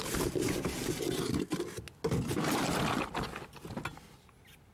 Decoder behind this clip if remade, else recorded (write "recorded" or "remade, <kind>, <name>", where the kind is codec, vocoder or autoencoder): recorded